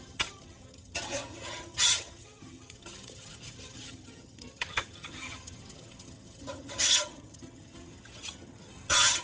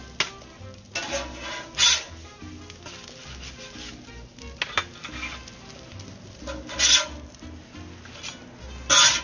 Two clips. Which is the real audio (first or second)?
second